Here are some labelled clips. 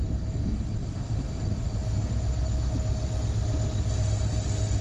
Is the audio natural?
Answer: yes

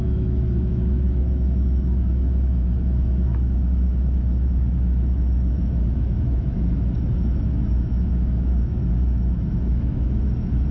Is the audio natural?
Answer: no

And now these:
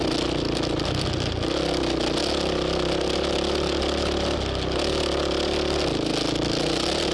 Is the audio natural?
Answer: yes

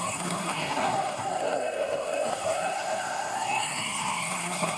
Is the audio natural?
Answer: no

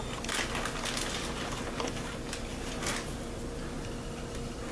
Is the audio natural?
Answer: yes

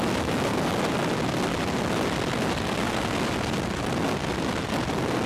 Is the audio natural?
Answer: yes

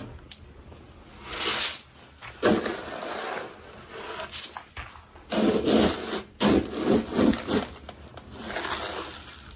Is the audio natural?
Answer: yes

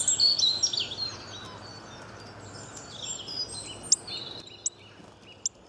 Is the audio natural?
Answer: yes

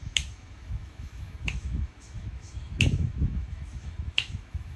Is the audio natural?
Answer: no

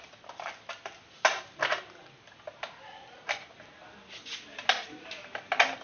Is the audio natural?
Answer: yes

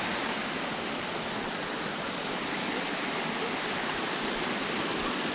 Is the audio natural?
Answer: yes